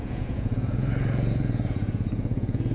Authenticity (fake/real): fake